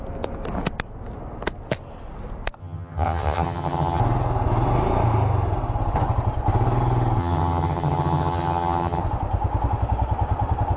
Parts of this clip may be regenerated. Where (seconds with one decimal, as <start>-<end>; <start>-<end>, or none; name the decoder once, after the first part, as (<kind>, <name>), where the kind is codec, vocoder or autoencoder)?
2.6-4.0 (vocoder, HiFi-GAN); 7.2-9.0